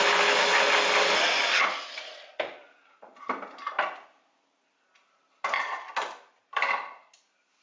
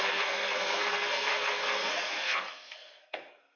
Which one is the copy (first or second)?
second